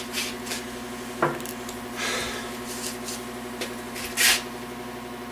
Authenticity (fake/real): real